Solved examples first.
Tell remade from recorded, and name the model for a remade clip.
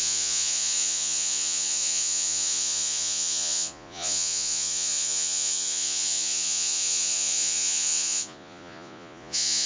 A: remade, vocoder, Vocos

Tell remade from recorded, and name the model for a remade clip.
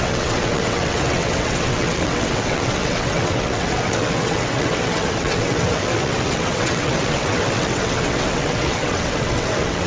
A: remade, vocoder, WaveNeXt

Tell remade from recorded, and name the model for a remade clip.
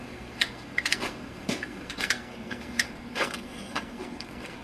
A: remade, codec, SNAC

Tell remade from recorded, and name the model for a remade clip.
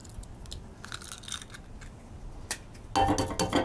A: recorded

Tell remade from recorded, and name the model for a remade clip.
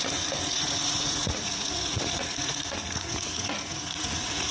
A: remade, vocoder, Vocos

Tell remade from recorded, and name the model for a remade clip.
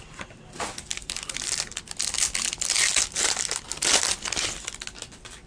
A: recorded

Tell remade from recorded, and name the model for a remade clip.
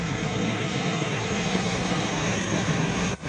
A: remade, codec, SNAC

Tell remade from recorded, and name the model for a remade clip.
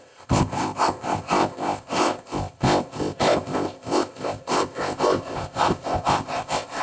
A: remade, codec, ZipCodec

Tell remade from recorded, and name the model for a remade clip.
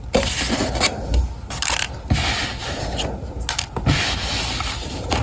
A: recorded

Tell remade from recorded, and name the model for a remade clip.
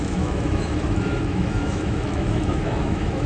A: remade, autoencoder, DAC-VAE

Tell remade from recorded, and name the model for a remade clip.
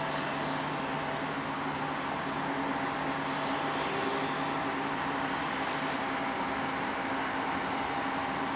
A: recorded